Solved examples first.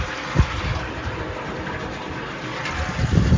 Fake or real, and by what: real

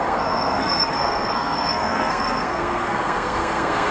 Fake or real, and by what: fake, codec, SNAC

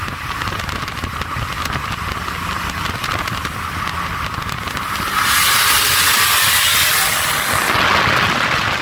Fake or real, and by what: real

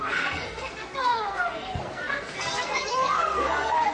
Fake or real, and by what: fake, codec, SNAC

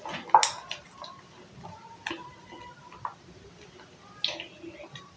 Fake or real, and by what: real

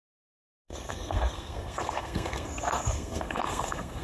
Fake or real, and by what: fake, codec, SNAC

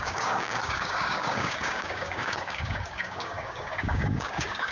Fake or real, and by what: fake, codec, DAC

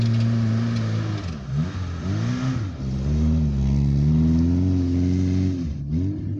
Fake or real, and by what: real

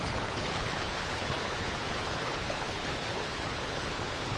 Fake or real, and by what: fake, codec, HILCodec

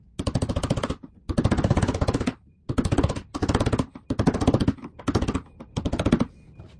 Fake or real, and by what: real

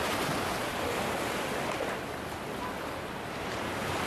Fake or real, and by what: real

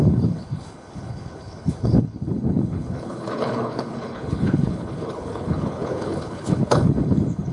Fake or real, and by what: fake, codec, HILCodec